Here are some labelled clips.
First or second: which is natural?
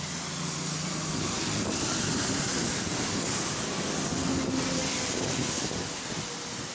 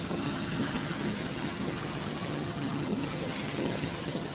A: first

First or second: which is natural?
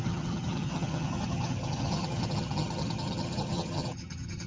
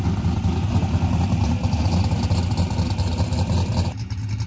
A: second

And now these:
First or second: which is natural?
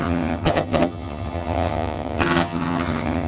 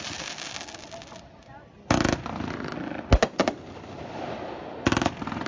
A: second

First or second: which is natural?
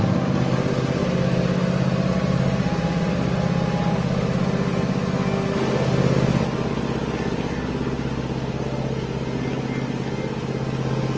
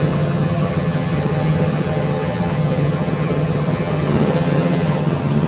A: first